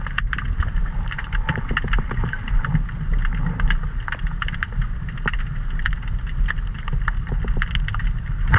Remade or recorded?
recorded